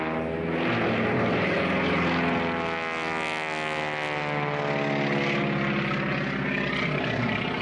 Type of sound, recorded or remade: recorded